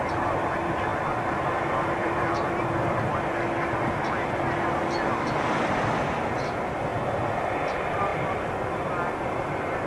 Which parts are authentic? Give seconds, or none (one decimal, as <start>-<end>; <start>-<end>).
0.0-0.9; 4.9-8.1; 8.9-9.9